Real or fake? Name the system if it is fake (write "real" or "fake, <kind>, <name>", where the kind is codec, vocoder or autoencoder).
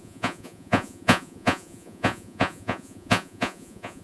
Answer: fake, vocoder, Vocos